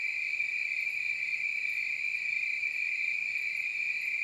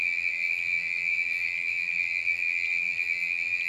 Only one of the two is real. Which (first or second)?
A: first